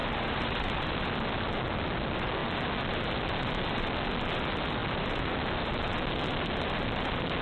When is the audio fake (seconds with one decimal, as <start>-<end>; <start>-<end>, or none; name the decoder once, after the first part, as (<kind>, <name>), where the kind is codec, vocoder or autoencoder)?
0.0-1.0 (vocoder, BigVGAN v2)